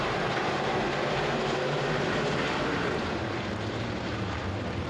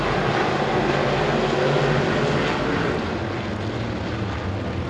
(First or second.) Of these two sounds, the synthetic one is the first